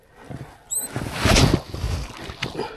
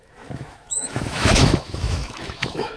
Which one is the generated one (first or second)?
second